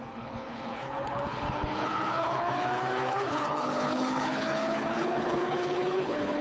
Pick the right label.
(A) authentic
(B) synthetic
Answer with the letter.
B